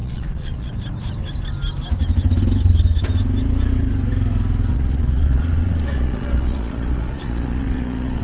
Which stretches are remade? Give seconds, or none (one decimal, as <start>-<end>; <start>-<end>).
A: 0.0-0.7; 4.7-8.2